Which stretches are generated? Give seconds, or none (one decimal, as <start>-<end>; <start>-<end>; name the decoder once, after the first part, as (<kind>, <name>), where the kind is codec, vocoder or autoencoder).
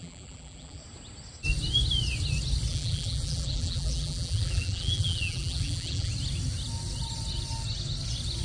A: 0.0-0.8 (vocoder, BigVGAN v2); 2.7-6.1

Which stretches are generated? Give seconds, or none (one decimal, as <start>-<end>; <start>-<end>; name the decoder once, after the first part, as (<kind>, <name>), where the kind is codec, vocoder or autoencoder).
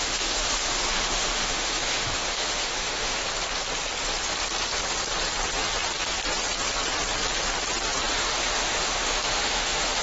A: 0.0-3.2 (autoencoder, DAC-VAE); 8.1-10.0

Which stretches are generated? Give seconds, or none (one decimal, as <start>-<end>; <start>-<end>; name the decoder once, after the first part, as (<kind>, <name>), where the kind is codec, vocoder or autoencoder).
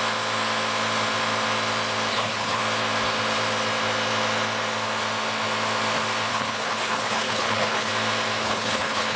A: 2.1-2.6 (codec, HILCodec); 6.3-7.9; 8.4-9.2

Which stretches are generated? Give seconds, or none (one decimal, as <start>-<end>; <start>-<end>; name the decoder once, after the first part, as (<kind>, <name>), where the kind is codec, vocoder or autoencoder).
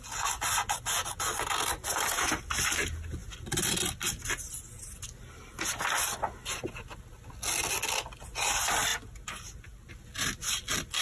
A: none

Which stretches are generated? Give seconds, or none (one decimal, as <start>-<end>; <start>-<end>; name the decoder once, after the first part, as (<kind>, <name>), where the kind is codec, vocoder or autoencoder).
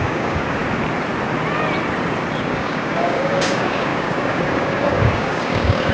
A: 0.0-0.6 (codec, DAC); 2.4-5.9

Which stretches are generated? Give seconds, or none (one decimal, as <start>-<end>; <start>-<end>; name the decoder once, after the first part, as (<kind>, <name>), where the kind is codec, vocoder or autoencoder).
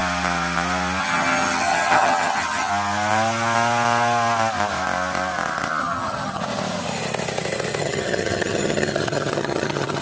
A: 1.0-2.7 (vocoder, HiFi-GAN); 5.8-6.4; 7.8-10.0